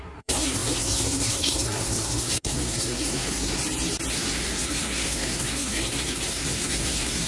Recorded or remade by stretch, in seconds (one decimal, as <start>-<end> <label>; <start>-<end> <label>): 0.0-3.6 remade; 3.6-4.1 recorded; 4.1-7.3 remade